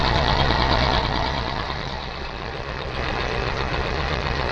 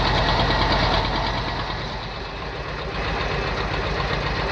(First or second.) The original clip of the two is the second